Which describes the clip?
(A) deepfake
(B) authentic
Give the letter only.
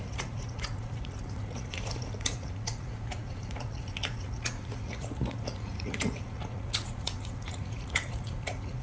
A